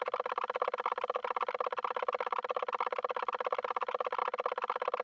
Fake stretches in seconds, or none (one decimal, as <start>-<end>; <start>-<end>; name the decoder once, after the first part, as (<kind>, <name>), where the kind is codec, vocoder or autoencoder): none